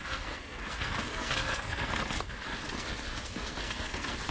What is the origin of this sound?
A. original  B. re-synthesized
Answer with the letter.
B